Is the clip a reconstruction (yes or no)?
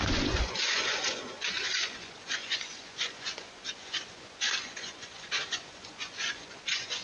yes